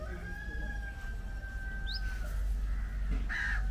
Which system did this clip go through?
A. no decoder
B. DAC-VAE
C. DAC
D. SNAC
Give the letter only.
A